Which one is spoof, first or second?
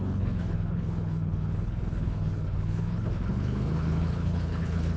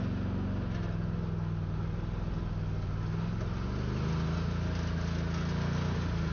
first